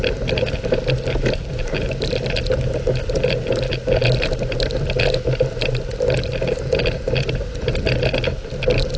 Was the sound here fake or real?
real